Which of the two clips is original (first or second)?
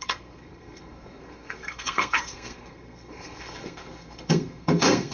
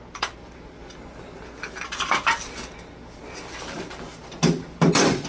second